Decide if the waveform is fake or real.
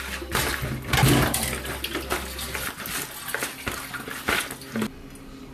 real